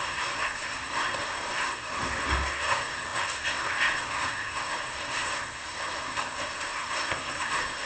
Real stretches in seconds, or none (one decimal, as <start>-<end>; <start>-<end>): none